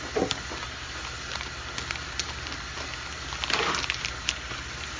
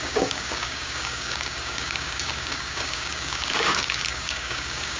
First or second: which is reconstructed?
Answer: second